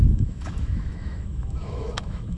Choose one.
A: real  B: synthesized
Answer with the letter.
B